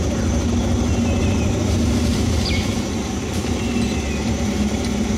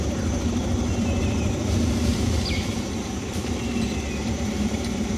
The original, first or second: first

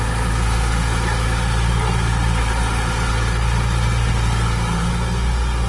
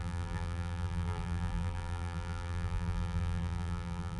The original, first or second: first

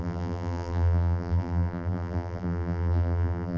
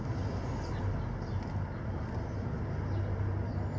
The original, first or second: second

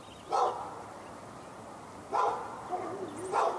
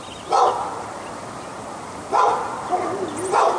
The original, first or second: first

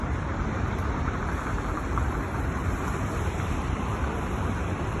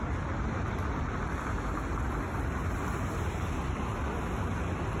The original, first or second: second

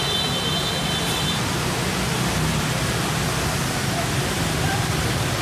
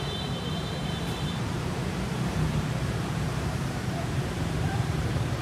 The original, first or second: first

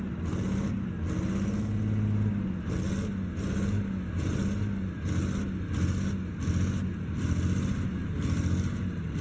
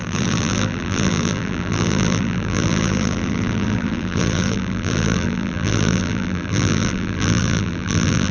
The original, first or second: first